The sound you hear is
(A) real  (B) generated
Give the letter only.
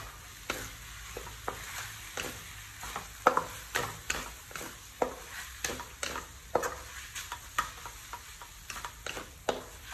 A